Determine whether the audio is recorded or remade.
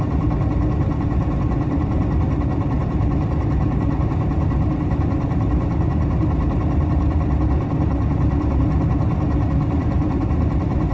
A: remade